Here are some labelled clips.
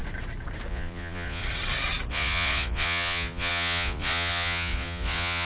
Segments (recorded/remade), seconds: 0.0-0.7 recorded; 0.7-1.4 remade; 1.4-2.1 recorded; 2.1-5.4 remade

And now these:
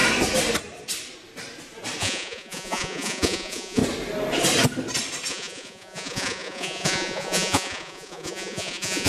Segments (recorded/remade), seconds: 0.0-2.0 recorded; 2.0-3.8 remade; 3.8-5.3 recorded; 5.3-9.1 remade